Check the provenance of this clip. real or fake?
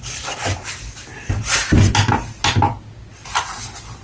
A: real